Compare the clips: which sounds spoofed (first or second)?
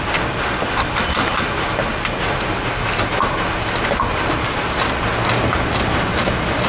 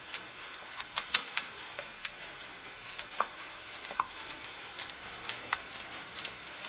second